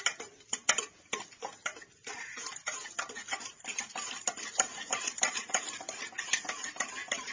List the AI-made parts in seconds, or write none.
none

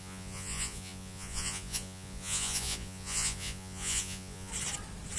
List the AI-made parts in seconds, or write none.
0.0-4.5

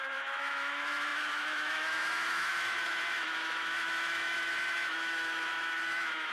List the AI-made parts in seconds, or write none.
0.0-6.3